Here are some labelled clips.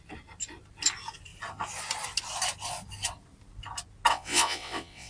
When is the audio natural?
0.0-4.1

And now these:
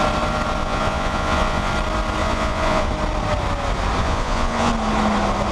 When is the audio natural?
0.0-0.6; 1.7-2.2; 2.9-4.0; 4.7-5.5

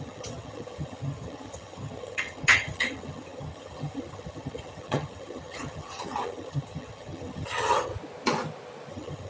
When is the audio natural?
7.9-8.9

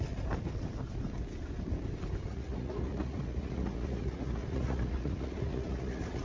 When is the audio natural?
0.0-2.3

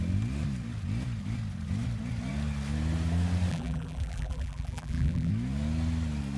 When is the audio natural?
0.0-3.5; 5.3-6.4

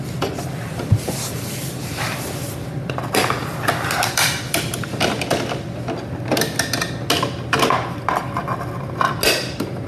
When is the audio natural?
0.0-0.6; 5.0-9.9

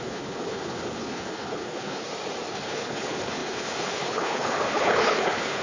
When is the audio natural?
2.0-2.5